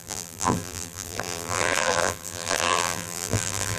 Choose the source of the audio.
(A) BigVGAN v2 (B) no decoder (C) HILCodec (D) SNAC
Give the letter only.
A